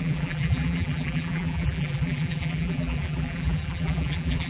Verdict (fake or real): fake